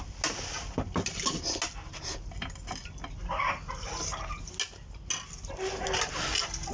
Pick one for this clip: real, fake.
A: real